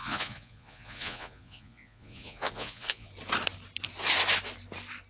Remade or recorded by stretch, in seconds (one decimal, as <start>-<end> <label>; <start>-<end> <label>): 0.0-3.1 remade; 3.1-5.1 recorded